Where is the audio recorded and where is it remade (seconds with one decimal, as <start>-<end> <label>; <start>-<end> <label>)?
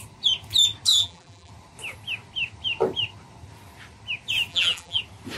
0.0-0.9 recorded; 0.9-1.5 remade; 1.5-4.5 recorded; 4.5-5.0 remade; 5.0-5.4 recorded